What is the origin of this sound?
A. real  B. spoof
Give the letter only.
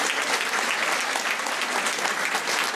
A